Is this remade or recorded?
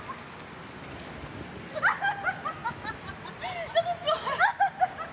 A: recorded